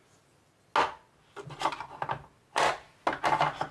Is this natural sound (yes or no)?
yes